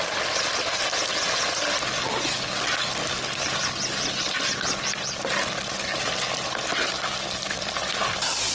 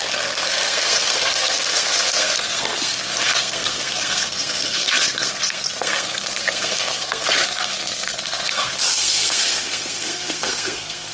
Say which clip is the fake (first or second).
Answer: second